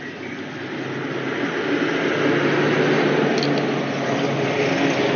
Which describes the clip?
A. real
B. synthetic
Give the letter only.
A